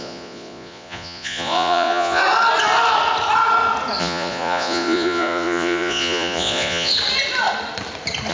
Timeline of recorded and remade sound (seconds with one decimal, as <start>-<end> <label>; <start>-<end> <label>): 0.0-2.2 remade; 2.2-4.0 recorded; 4.0-6.9 remade; 6.9-8.3 recorded